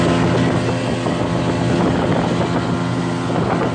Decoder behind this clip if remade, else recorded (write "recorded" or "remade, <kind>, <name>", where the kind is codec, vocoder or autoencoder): recorded